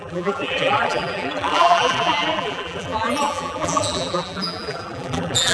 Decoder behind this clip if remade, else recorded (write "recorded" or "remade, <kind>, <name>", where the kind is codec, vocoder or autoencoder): remade, vocoder, BigVGAN v2